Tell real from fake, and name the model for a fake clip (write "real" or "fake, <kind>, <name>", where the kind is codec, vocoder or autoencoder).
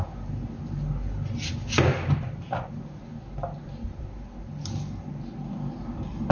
real